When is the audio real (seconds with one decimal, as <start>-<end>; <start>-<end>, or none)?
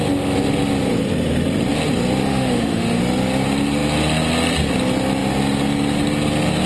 0.0-2.2; 3.0-6.7